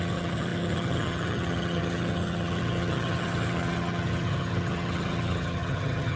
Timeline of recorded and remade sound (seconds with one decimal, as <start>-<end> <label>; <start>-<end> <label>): 0.0-6.2 remade